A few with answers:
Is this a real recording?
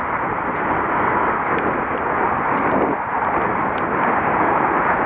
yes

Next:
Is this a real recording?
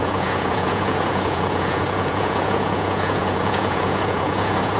no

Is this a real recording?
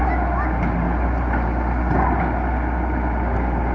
yes